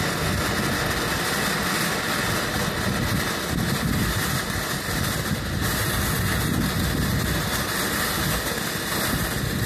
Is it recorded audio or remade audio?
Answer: recorded